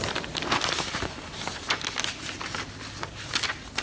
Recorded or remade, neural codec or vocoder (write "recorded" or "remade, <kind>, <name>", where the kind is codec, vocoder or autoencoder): recorded